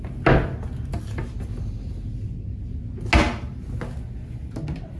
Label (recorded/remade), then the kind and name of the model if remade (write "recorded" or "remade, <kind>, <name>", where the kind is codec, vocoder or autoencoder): recorded